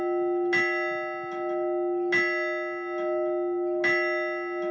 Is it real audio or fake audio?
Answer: real